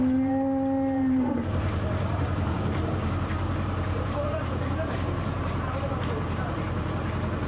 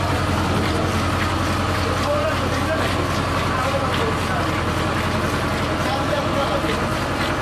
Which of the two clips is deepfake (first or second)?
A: first